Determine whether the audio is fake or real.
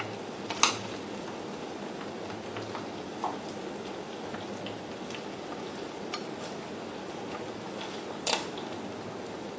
real